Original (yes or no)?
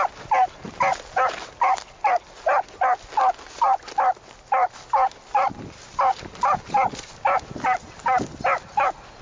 yes